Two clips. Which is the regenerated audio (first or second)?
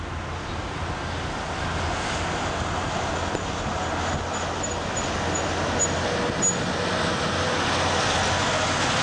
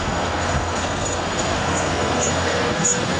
second